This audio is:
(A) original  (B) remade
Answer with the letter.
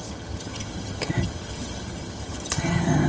B